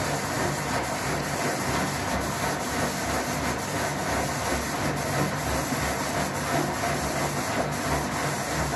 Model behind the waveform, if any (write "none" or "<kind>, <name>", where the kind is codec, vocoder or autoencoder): none